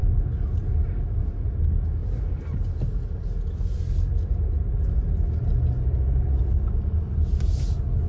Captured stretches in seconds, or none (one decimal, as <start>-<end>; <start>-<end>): 0.0-8.1